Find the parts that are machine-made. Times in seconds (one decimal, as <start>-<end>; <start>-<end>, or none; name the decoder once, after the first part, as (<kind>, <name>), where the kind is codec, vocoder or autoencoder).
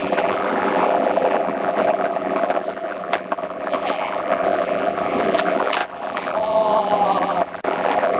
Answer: 0.0-8.2 (vocoder, BigVGAN v2)